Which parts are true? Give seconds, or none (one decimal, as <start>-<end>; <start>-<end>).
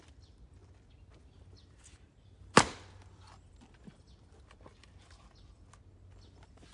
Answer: 0.0-6.7